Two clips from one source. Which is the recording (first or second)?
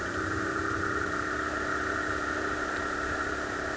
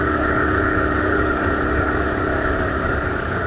first